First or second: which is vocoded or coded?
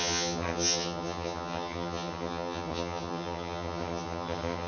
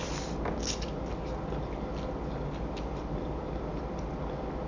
first